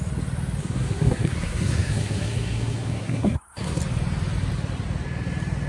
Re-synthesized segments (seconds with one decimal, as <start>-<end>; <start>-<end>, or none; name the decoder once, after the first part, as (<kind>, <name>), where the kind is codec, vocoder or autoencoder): 0.6-3.8 (codec, SNAC)